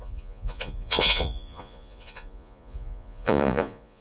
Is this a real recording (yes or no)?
no